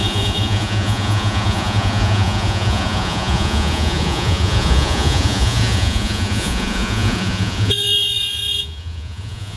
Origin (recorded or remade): remade